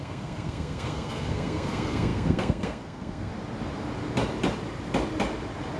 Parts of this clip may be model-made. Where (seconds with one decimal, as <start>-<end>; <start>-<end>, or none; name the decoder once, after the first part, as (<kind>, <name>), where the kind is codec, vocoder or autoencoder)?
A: 0.0-3.3 (codec, SNAC)